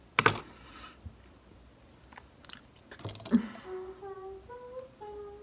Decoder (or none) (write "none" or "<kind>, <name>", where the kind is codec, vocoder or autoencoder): none